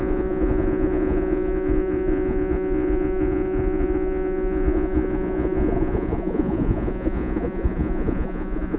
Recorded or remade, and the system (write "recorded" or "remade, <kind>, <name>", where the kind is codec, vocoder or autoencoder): remade, vocoder, Vocos